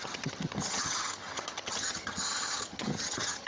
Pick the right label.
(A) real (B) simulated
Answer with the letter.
B